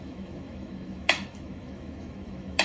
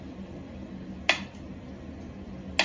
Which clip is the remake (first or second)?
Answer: first